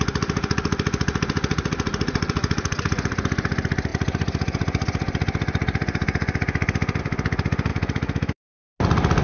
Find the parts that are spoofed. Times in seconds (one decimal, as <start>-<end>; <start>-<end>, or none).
7.7-8.4